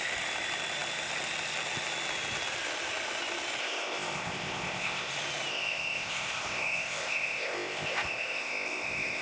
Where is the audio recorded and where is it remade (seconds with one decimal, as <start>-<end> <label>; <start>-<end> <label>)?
0.0-3.6 recorded; 3.6-5.1 remade; 5.1-5.5 recorded; 5.5-9.2 remade

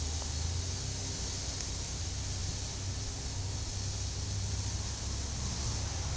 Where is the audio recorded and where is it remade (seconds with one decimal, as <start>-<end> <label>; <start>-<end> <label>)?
0.0-6.2 recorded

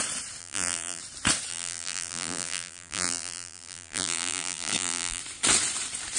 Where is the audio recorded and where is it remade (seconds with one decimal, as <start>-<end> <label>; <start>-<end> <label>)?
0.0-0.4 recorded; 0.4-1.0 remade; 1.0-1.5 recorded; 1.5-5.2 remade; 5.2-6.2 recorded